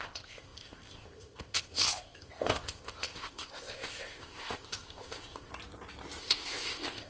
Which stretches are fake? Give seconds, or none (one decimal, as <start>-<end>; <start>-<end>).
0.0-5.5; 6.2-7.1